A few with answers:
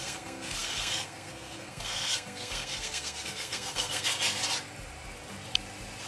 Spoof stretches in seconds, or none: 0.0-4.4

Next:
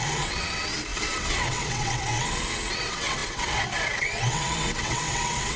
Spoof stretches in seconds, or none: 0.0-5.6

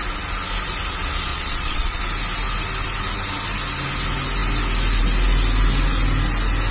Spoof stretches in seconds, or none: 1.3-2.0

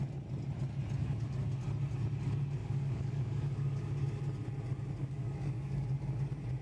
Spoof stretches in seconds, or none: 1.0-1.5; 2.6-4.2; 5.0-6.0

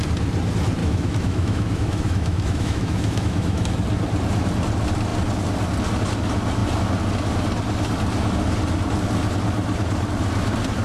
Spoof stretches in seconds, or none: 0.8-3.7

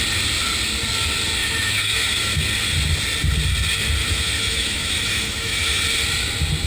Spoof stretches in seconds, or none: 1.4-2.2; 4.0-5.8